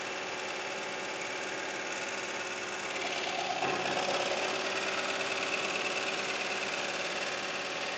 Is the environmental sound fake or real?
real